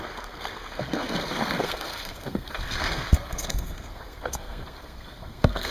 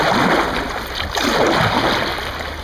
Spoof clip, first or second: first